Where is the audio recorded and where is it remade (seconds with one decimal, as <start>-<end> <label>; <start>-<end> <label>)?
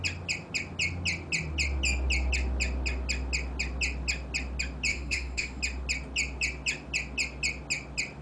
0.0-4.9 recorded; 4.9-5.6 remade; 5.6-8.2 recorded